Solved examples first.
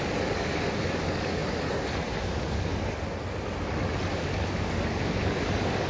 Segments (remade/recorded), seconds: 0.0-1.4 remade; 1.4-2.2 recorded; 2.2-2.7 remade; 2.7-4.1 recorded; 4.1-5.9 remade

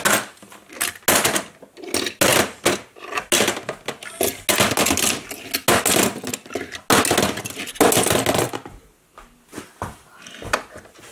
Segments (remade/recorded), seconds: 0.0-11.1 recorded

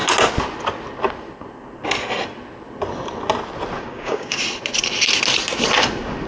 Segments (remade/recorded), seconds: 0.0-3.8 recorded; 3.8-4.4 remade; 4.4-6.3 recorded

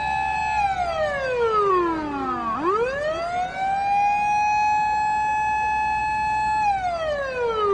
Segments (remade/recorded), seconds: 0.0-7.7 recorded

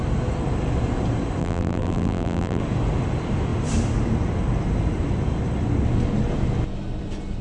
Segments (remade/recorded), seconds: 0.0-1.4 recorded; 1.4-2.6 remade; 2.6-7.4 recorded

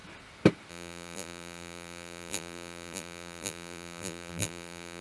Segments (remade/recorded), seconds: 0.0-0.7 recorded; 0.7-5.0 remade